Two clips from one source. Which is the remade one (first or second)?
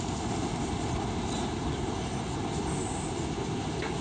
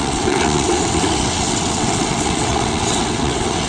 second